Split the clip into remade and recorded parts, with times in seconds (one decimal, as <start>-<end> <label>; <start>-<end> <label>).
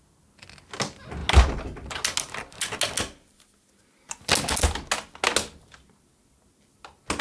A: 0.0-7.2 recorded